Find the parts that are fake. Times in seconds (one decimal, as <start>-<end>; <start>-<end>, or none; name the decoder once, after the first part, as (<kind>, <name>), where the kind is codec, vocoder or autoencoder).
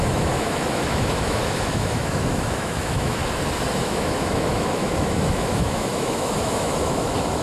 0.0-3.2 (autoencoder, DAC-VAE); 3.8-7.4